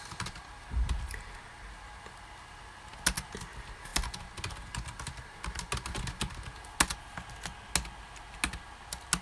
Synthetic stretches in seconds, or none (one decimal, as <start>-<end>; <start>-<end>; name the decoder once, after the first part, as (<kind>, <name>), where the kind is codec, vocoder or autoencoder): none